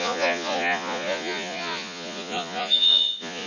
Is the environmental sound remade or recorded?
remade